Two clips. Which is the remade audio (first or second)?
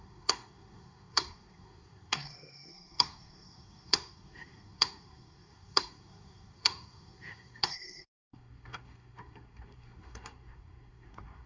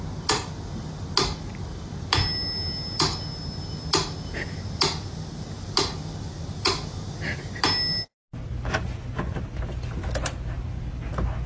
first